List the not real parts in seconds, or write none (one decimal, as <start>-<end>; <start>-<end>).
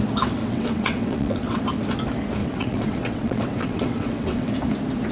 0.4-1.6; 2.4-4.5